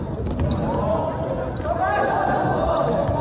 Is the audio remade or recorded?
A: recorded